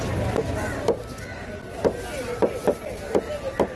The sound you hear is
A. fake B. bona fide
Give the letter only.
B